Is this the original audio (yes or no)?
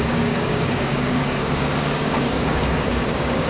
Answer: no